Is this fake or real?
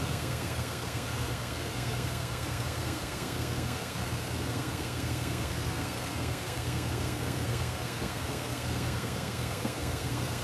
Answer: fake